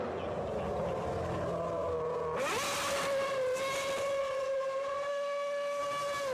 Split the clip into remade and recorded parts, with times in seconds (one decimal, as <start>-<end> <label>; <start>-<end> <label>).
0.0-5.1 recorded; 5.1-5.8 remade; 5.8-6.3 recorded